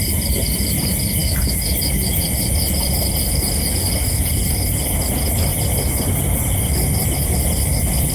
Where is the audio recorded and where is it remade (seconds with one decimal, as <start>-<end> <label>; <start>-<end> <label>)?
0.0-1.2 recorded; 1.2-2.2 remade; 2.2-8.1 recorded